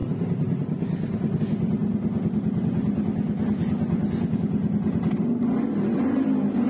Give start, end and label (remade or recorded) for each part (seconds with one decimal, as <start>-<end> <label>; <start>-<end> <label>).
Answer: 0.0-6.7 recorded